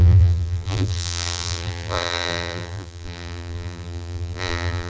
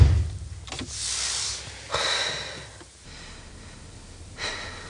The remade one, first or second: first